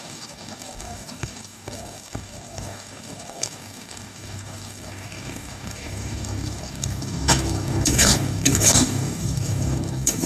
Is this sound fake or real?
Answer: fake